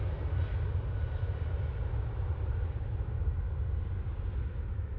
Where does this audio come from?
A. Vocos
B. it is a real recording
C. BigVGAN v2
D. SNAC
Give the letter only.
B